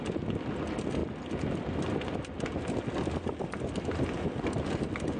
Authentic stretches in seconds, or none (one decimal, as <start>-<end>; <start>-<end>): 0.0-5.2